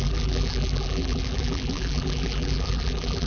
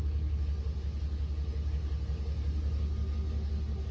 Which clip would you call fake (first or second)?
first